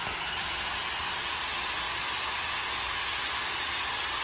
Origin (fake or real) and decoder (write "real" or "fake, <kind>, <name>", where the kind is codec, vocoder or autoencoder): real